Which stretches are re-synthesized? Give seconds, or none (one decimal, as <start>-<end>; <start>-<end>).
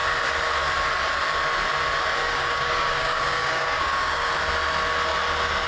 2.2-4.3